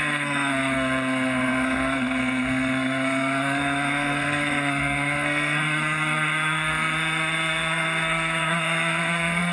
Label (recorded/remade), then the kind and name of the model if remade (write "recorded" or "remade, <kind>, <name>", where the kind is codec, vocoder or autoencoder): remade, codec, SNAC